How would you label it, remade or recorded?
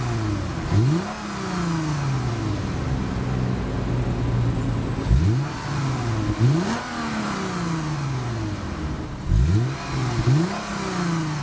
recorded